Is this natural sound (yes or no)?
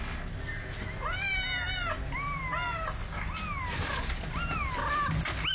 yes